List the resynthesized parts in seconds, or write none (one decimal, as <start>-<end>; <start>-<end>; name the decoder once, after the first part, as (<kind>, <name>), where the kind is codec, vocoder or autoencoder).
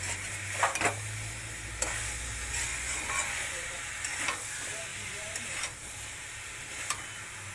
2.7-3.8 (vocoder, Vocos)